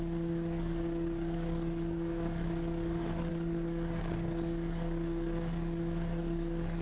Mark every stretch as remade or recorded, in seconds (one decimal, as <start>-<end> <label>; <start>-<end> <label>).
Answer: 0.0-6.8 remade